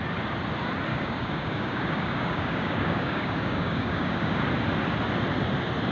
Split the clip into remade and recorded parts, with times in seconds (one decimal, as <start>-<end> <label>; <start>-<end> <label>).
0.0-0.9 recorded; 0.9-4.4 remade; 4.4-5.9 recorded